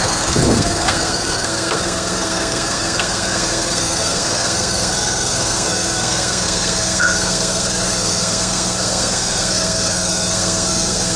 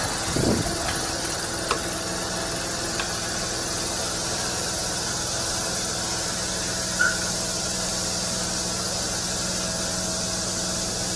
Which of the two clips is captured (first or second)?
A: second